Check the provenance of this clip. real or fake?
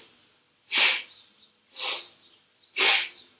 real